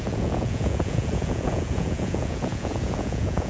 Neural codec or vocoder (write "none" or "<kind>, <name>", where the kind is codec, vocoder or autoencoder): vocoder, Vocos